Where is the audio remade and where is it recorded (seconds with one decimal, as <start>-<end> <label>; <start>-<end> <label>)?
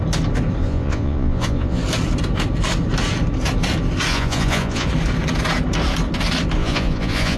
0.0-0.6 recorded; 0.6-1.8 remade; 1.8-4.1 recorded; 4.1-4.9 remade; 4.9-6.6 recorded; 6.6-7.4 remade